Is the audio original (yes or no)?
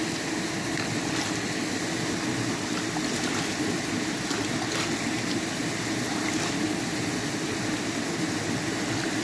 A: yes